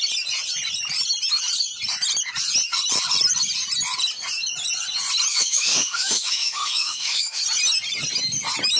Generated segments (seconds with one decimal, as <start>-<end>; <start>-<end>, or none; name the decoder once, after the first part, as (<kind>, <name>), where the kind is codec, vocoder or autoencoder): 5.3-7.4 (autoencoder, DAC-VAE)